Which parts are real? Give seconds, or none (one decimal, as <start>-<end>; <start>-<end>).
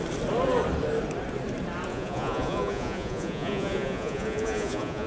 0.0-1.9